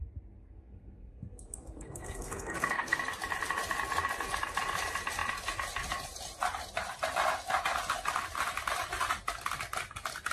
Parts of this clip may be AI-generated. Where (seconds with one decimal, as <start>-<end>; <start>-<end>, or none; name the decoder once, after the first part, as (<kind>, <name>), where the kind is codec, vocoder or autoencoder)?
0.4-3.0 (codec, SNAC)

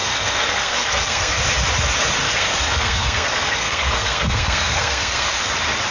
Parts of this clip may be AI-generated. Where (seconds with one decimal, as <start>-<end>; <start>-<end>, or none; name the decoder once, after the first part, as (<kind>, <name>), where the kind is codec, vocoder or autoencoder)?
0.0-1.4 (codec, SNAC); 2.2-5.5

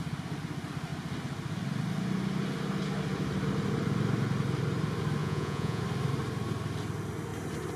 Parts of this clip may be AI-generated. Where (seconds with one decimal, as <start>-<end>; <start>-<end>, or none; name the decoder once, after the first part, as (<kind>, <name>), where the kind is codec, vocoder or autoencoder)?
5.2-5.8 (vocoder, Vocos)

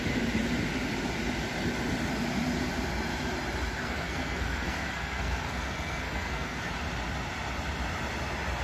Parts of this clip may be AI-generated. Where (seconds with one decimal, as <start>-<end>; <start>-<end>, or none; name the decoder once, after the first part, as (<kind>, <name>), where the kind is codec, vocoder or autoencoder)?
3.7-6.7 (codec, SNAC)

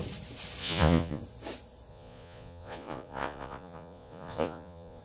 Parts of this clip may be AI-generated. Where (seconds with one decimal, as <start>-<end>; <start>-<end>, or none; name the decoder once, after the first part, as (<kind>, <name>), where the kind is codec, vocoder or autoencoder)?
0.6-1.2 (vocoder, Vocos); 1.9-5.0

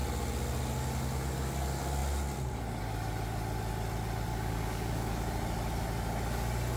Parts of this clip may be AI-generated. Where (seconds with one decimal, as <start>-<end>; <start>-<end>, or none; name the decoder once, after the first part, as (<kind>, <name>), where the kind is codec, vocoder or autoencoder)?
4.3-5.1 (codec, DAC)